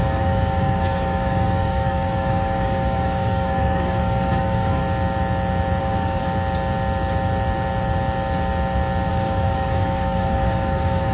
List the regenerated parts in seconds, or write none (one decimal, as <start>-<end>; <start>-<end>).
0.0-4.8; 5.8-6.2; 9.1-11.1